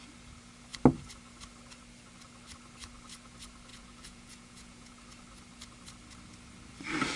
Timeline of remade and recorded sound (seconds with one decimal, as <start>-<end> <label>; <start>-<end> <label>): 0.0-3.7 recorded; 3.7-4.9 remade; 4.9-7.2 recorded